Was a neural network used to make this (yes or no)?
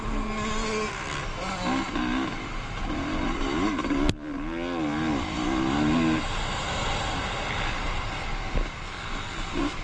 no